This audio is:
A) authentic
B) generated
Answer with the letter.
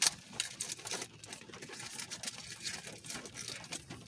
A